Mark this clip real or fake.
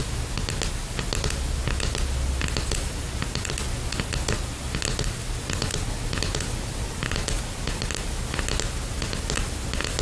real